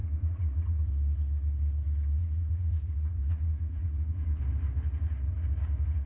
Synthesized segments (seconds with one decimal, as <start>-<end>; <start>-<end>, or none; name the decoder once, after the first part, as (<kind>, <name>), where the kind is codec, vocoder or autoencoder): 0.0-0.9 (vocoder, Vocos); 2.2-4.4